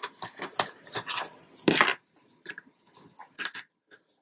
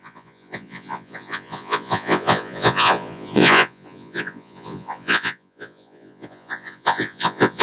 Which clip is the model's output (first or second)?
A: second